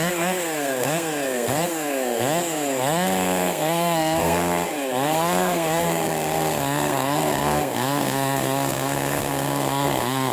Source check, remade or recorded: remade